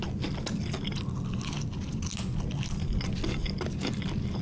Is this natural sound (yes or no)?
yes